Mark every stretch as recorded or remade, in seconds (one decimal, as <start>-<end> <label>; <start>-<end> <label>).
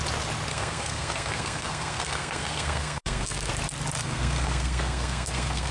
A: 0.0-0.5 recorded; 0.5-3.5 remade; 3.5-4.0 recorded; 4.0-5.7 remade